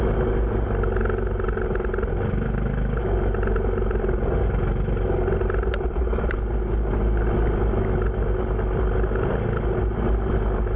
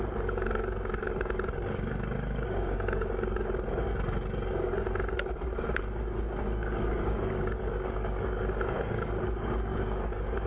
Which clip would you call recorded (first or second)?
first